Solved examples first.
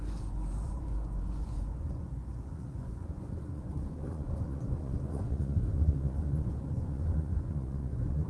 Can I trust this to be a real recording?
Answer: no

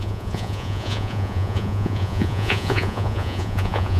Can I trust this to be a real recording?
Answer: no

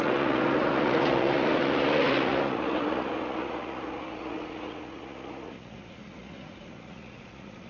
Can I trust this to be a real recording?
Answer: no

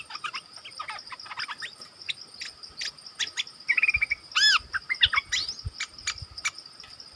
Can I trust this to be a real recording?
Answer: yes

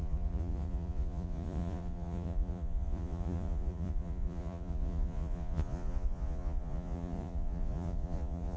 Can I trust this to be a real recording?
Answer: no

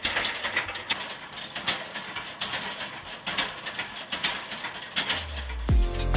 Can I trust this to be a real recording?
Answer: yes